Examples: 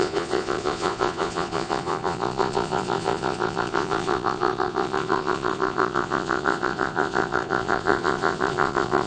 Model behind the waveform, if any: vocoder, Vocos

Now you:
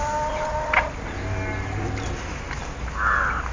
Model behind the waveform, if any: none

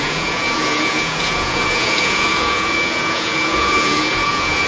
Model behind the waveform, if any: vocoder, Vocos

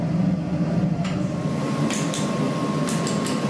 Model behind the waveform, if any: none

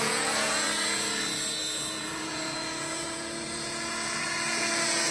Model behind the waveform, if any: vocoder, Vocos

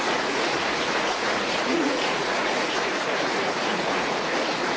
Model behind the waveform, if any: vocoder, Vocos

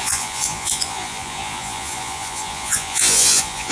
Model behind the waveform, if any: vocoder, Vocos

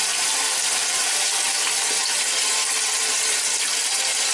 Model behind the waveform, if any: none